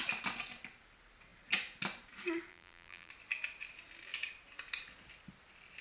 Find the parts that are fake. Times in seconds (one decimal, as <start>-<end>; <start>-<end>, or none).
2.5-3.1